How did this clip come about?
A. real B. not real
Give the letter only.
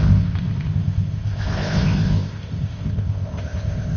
B